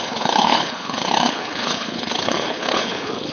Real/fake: fake